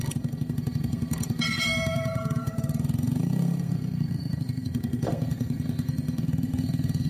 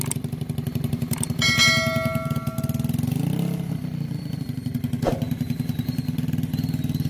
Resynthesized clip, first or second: first